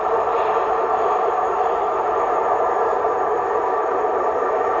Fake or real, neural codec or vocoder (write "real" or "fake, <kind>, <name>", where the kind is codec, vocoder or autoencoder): fake, vocoder, BigVGAN v2